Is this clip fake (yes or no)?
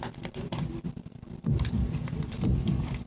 yes